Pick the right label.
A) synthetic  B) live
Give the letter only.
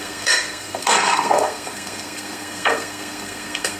A